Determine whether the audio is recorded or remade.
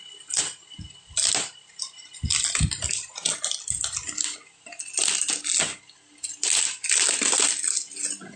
recorded